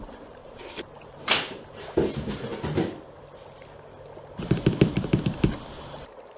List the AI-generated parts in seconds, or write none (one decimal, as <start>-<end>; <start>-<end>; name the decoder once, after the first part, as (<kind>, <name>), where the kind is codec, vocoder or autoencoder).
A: 0.0-2.5 (vocoder, BigVGAN v2); 5.8-6.4

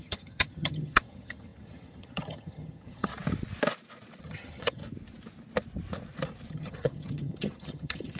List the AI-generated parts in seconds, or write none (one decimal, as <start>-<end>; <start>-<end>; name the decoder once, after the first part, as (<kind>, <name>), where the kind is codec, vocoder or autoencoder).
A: 0.0-3.1 (vocoder, HiFi-GAN); 4.2-4.8; 6.5-8.2

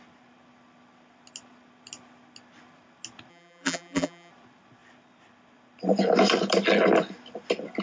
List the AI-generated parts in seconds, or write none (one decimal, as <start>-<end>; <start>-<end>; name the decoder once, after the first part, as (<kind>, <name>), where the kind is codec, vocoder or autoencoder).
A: 3.3-4.3 (vocoder, BigVGAN v2)